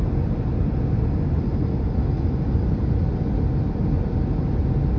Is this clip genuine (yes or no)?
no